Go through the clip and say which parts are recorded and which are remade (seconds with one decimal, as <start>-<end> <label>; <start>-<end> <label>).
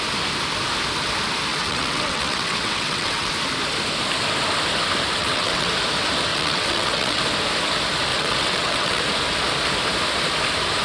0.0-1.5 recorded; 1.5-3.3 remade; 3.3-5.2 recorded; 5.2-5.7 remade; 5.7-6.3 recorded; 6.3-7.2 remade; 7.2-8.1 recorded; 8.1-9.0 remade; 9.0-10.8 recorded